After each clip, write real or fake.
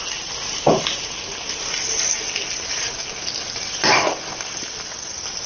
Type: real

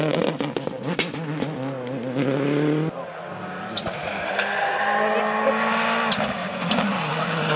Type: real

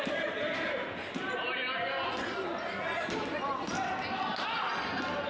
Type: real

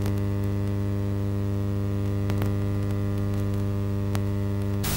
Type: real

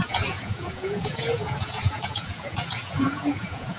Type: fake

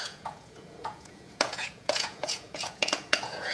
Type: fake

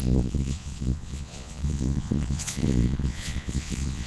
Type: fake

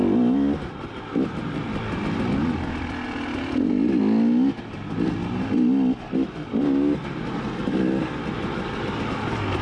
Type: real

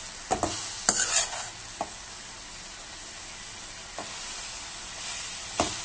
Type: real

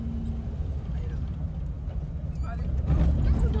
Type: real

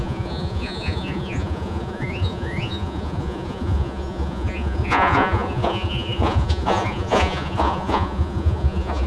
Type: fake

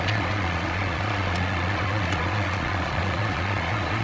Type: fake